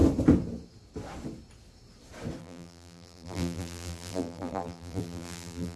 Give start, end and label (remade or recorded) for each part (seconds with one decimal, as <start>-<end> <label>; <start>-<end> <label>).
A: 0.0-2.4 recorded; 2.4-5.8 remade